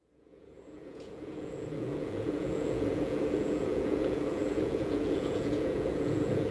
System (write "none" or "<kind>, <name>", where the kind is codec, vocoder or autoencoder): vocoder, Vocos